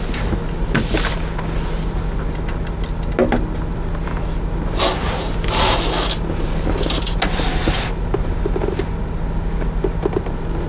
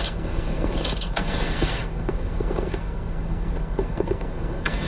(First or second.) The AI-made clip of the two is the second